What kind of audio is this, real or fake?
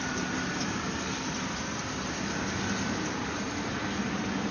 real